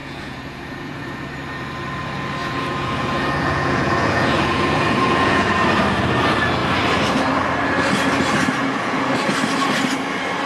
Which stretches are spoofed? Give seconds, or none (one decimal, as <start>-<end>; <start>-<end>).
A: 0.0-1.3; 2.4-5.5; 8.6-9.1